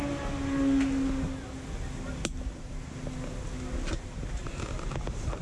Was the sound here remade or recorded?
recorded